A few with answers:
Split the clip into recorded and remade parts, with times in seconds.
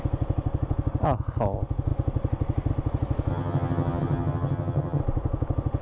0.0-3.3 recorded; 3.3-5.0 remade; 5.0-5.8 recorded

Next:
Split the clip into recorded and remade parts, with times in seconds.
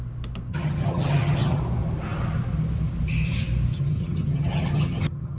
0.0-0.5 recorded; 0.5-1.6 remade; 1.6-3.7 recorded; 3.7-5.4 remade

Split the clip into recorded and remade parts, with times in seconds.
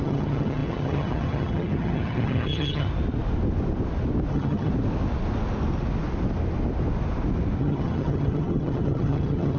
0.0-2.9 remade; 2.9-4.3 recorded; 4.3-4.7 remade; 4.7-7.6 recorded; 7.6-9.6 remade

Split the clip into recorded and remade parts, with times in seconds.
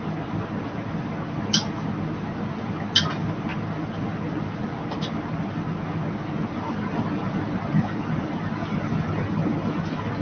0.0-10.2 recorded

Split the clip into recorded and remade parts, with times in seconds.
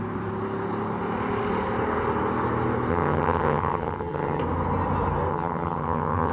0.0-2.9 recorded; 2.9-4.4 remade; 4.4-5.3 recorded; 5.3-6.3 remade